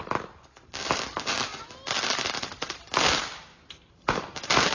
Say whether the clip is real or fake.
real